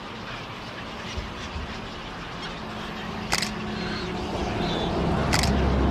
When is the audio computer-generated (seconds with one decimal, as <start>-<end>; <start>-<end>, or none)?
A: none